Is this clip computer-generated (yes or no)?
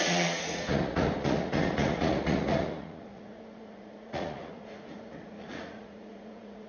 yes